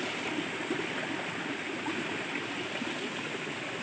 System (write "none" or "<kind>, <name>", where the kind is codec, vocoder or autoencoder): none